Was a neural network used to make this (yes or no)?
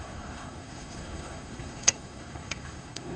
yes